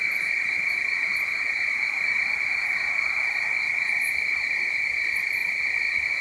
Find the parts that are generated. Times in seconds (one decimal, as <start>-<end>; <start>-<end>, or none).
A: none